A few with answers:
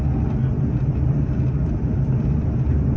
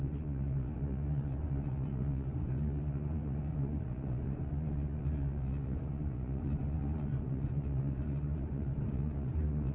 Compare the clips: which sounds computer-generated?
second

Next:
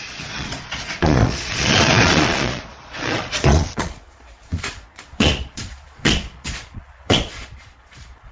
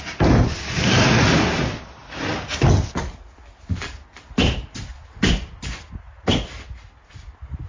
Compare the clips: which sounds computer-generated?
first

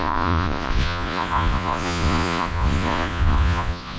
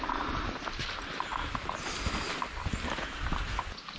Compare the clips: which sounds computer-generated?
first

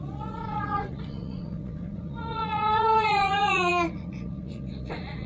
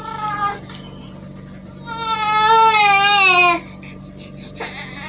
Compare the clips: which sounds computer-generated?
first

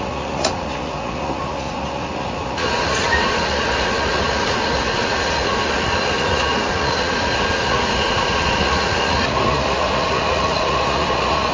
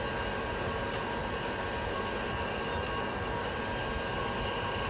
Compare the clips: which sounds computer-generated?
first